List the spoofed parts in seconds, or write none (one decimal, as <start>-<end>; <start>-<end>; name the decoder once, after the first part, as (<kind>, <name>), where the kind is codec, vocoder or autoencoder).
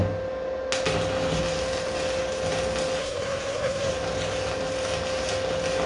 3.0-3.9 (codec, SNAC)